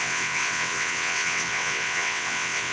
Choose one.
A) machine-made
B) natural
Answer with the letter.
A